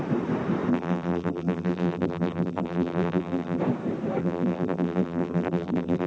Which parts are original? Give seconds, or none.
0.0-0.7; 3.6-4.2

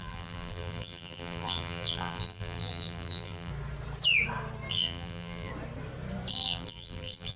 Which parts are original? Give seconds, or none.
3.5-4.7; 5.5-6.3

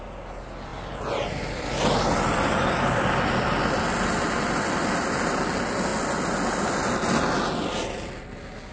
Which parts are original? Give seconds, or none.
0.0-0.7; 4.7-8.7

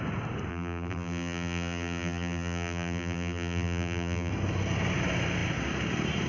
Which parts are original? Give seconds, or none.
0.0-0.5; 4.3-6.3